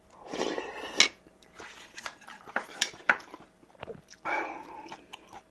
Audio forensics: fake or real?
real